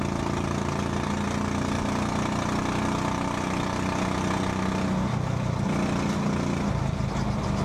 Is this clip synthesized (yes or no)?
no